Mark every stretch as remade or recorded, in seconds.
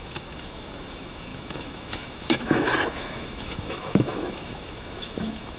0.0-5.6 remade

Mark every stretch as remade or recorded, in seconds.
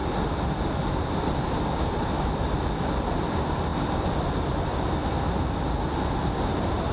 0.0-6.9 recorded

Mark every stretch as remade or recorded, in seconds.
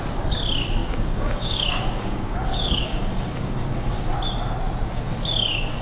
0.0-0.8 recorded; 0.8-4.0 remade; 4.0-5.8 recorded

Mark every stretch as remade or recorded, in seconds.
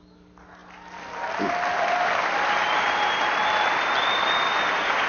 0.0-5.1 recorded